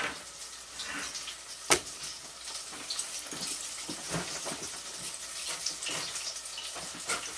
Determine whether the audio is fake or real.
real